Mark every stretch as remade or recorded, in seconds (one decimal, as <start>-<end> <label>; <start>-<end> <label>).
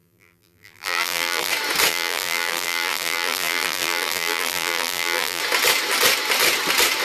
0.0-1.5 remade; 1.5-1.9 recorded; 1.9-5.4 remade; 5.4-7.0 recorded